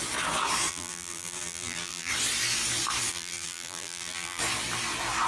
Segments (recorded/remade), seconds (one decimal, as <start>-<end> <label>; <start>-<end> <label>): 0.0-0.7 recorded; 0.7-2.1 remade; 2.1-3.1 recorded; 3.1-4.4 remade; 4.4-5.3 recorded